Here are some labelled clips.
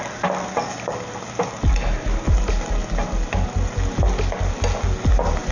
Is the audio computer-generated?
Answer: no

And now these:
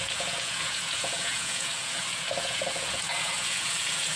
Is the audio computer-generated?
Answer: yes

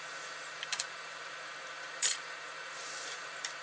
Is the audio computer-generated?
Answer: yes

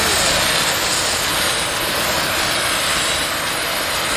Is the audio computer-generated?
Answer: no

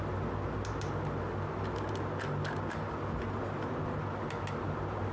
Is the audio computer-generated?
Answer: no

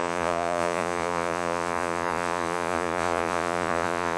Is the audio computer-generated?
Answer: yes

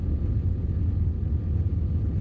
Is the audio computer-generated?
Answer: no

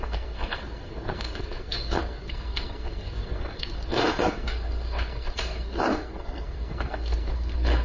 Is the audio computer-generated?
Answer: yes